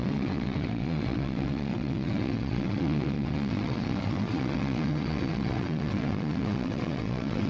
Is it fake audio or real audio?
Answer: fake